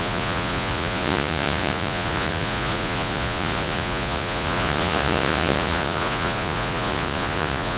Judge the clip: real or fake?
fake